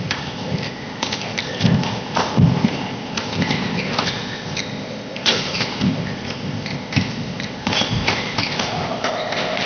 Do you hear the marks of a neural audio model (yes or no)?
yes